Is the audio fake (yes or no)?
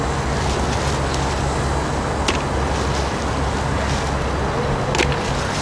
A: no